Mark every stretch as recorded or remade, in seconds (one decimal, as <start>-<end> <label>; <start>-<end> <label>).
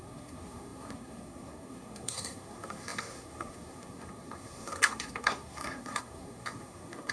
0.0-7.1 remade